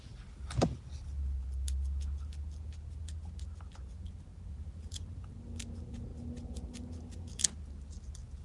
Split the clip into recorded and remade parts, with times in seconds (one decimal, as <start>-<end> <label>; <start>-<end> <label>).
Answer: 0.0-8.4 recorded